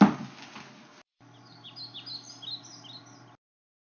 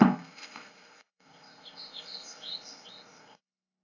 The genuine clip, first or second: first